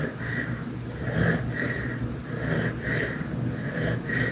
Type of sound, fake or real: real